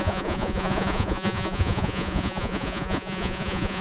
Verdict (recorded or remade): remade